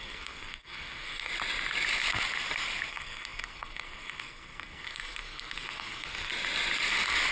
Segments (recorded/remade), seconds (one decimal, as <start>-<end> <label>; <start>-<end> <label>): 0.0-1.3 remade; 1.3-2.9 recorded; 2.9-6.3 remade; 6.3-7.3 recorded